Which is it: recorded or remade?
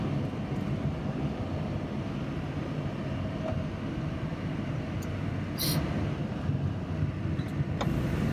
recorded